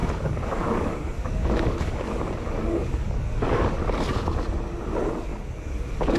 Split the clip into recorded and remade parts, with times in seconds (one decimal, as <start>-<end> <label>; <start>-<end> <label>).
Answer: 0.0-3.7 remade; 3.7-5.3 recorded; 5.3-6.2 remade